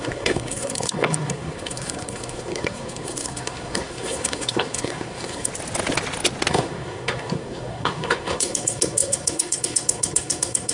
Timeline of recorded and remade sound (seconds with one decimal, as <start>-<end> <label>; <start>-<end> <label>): 0.0-5.5 remade; 5.5-6.5 recorded; 6.5-10.7 remade